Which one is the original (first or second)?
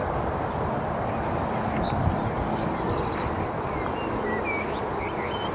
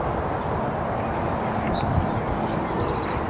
second